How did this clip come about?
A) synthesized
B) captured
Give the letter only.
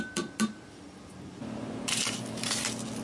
B